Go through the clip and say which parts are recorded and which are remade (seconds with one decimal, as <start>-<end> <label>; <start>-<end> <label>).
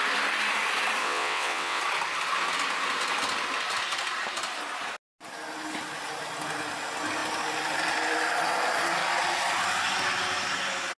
0.0-1.0 recorded; 1.0-1.8 remade; 1.8-11.0 recorded